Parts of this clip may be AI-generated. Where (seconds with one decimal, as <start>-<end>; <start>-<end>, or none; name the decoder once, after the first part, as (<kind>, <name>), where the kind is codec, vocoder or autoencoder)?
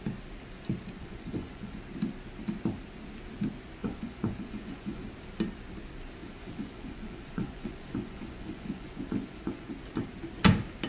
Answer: 1.0-1.8 (vocoder, Vocos); 3.8-5.0; 6.2-9.7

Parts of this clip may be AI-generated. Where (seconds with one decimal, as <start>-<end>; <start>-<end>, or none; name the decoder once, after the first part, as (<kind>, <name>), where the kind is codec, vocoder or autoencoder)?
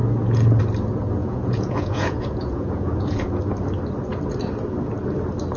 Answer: 1.2-3.4 (vocoder, Vocos)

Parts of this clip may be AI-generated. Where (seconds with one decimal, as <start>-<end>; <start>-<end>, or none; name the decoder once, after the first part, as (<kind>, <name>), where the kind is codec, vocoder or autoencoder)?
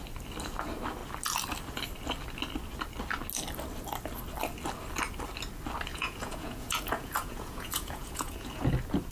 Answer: 5.9-8.7 (vocoder, Vocos)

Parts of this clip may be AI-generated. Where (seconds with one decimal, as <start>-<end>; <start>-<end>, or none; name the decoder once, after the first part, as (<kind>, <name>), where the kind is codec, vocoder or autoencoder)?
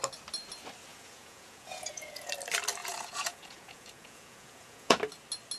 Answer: 0.9-2.3 (vocoder, Vocos); 2.8-5.0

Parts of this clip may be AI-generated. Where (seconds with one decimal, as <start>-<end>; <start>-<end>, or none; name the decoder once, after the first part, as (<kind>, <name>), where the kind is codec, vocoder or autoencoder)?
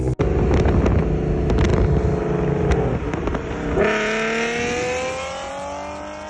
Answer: none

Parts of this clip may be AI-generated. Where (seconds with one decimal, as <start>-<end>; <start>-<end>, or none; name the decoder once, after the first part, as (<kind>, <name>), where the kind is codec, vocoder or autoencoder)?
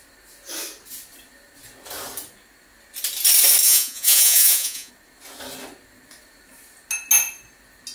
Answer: 3.6-4.9 (vocoder, Vocos)